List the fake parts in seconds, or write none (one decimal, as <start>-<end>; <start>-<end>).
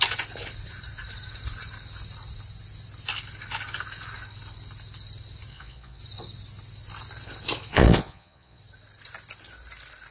5.5-6.0; 7.7-8.6